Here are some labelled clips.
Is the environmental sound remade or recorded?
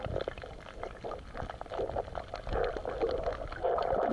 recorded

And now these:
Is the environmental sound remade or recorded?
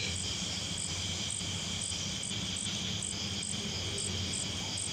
recorded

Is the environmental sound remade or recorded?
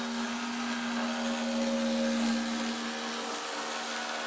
recorded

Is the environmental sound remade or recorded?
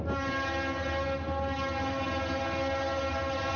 recorded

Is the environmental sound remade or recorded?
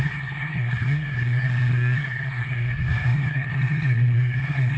remade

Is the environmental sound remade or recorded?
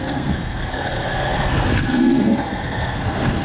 remade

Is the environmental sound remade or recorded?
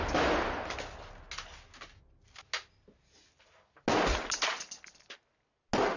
recorded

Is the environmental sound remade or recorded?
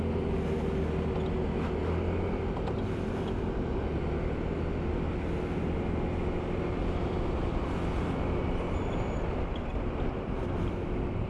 recorded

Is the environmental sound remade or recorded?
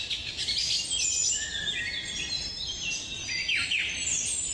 recorded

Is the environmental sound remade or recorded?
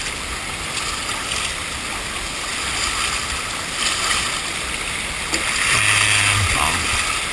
recorded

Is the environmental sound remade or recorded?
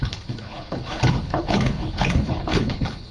remade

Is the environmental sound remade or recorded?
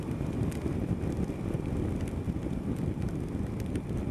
recorded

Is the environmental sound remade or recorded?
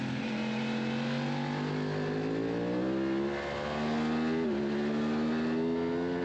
recorded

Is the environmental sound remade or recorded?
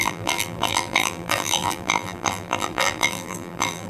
remade